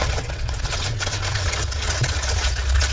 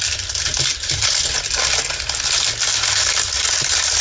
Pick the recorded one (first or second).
second